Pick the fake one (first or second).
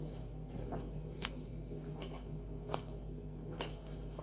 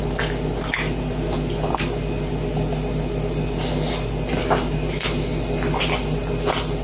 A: first